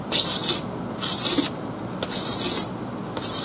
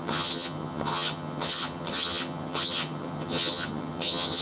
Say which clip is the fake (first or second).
second